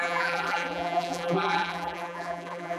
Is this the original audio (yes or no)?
no